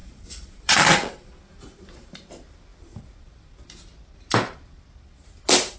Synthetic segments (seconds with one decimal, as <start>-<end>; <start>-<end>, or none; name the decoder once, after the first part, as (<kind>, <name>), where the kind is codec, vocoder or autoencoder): 0.0-1.4 (vocoder, Vocos)